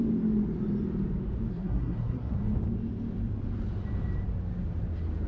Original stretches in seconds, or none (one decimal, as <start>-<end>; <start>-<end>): 0.0-1.5; 2.4-5.3

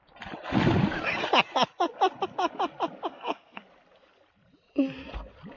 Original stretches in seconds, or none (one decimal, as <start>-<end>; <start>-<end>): 0.0-3.1; 3.6-5.6

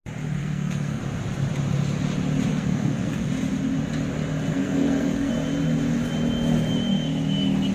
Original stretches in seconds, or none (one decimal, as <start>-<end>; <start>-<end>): 0.0-0.4; 1.0-2.5; 3.3-4.5; 5.3-7.7